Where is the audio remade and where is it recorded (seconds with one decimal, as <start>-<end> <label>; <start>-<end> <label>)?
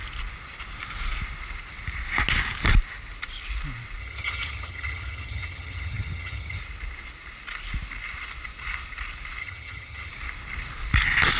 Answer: 0.0-4.0 recorded; 4.0-6.6 remade; 6.6-9.4 recorded; 9.4-10.1 remade; 10.1-11.4 recorded